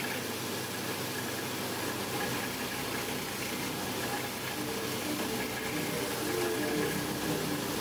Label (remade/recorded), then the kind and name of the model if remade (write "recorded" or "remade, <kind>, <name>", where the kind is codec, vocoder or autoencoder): recorded